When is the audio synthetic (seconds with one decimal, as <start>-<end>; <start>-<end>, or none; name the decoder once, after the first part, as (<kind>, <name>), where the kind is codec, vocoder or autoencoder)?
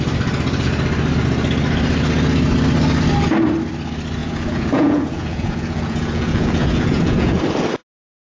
4.2-7.4 (vocoder, Vocos)